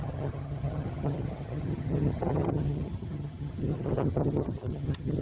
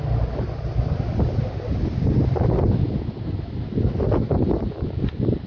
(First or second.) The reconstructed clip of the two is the first